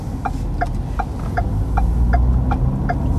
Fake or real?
real